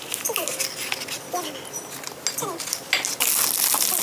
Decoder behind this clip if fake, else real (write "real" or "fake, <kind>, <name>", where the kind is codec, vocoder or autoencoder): real